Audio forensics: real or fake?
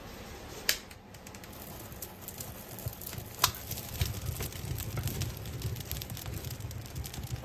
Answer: real